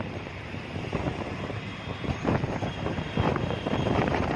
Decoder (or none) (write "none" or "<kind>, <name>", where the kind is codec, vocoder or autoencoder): vocoder, BigVGAN v2